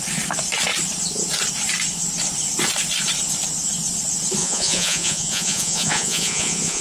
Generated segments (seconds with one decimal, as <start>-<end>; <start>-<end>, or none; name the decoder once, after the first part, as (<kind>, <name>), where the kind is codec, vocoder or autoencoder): 4.4-6.8 (vocoder, Vocos)